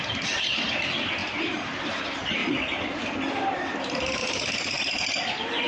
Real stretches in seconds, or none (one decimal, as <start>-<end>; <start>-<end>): 0.0-5.7